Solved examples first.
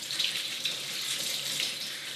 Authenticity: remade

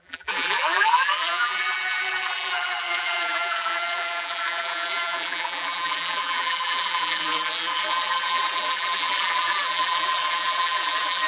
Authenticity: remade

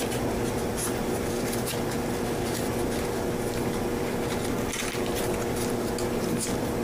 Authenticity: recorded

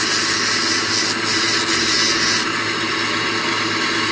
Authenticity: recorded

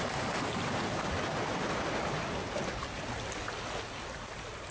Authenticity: recorded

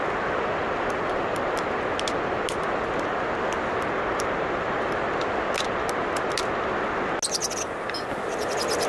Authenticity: recorded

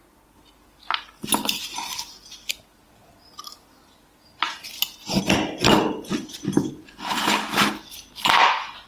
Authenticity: recorded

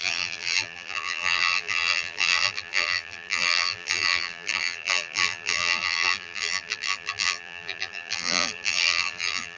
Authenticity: remade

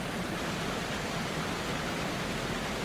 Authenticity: recorded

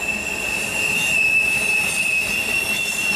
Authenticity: remade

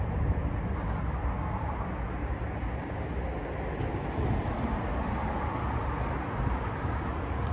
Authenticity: recorded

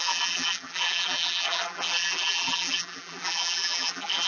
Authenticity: remade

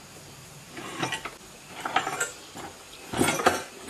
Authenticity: recorded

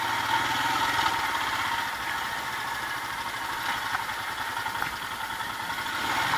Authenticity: recorded